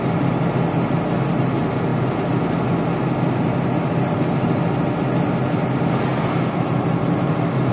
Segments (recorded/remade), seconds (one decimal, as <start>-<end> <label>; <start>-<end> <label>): 0.0-1.9 recorded; 1.9-2.4 remade; 2.4-6.1 recorded; 6.1-7.7 remade